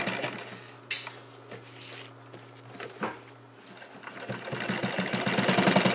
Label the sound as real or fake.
real